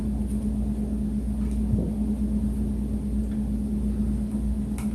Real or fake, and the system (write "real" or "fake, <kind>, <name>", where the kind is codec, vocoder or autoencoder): real